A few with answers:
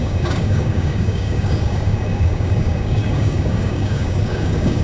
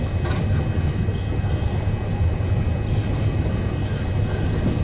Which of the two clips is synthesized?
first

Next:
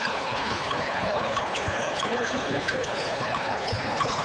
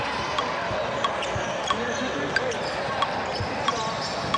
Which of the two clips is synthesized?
first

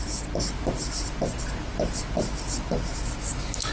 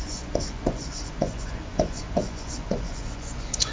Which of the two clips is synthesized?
second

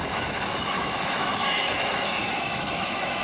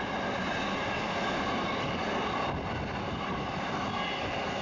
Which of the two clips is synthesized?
first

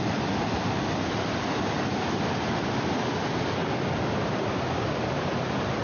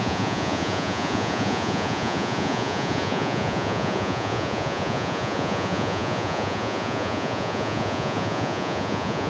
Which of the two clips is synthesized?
second